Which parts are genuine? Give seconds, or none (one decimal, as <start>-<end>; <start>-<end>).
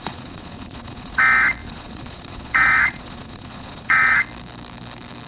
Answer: 1.2-1.6; 4.2-5.3